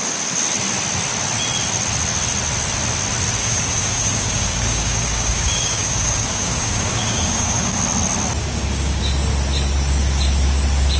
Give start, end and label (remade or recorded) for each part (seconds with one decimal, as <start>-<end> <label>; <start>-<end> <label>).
0.0-3.4 recorded; 3.4-7.8 remade; 7.8-8.4 recorded; 8.4-9.0 remade; 9.0-11.0 recorded